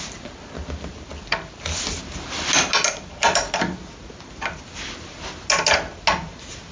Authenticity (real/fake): real